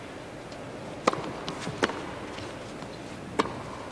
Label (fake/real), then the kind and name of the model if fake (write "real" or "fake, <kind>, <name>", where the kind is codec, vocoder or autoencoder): real